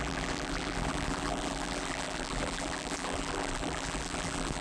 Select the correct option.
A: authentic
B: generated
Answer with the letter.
B